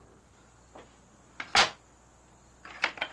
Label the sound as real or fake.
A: real